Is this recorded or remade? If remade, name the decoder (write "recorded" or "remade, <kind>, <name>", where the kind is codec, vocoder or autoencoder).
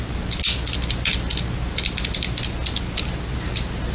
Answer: recorded